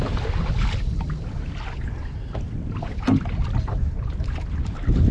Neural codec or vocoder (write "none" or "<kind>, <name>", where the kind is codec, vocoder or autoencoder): none